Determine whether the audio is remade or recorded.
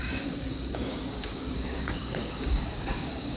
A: remade